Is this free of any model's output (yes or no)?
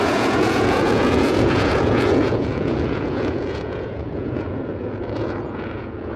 no